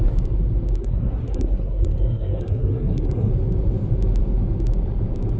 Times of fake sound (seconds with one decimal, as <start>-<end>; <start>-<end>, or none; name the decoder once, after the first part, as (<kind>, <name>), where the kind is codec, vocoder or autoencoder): 0.8-3.3 (codec, SNAC)

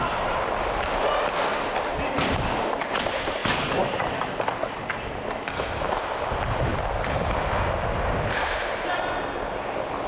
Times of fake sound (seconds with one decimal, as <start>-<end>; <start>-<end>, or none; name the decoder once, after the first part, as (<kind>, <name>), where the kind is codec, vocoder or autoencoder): none

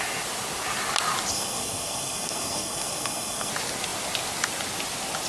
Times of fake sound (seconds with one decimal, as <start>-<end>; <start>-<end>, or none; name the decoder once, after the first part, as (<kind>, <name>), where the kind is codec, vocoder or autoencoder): 1.3-3.5 (codec, SNAC)

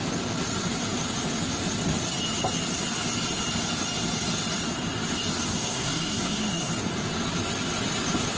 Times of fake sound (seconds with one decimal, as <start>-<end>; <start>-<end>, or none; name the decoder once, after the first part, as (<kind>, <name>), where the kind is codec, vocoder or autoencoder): 5.5-6.7 (codec, SNAC)

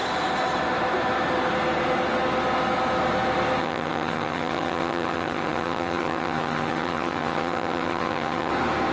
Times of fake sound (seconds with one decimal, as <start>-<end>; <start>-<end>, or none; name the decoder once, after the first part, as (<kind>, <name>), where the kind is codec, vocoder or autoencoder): 3.6-8.5 (vocoder, HiFi-GAN)